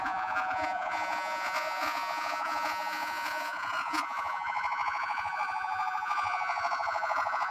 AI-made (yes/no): yes